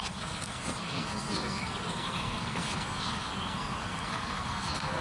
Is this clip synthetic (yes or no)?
yes